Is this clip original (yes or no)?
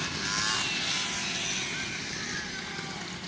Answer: yes